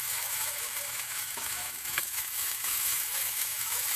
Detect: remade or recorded remade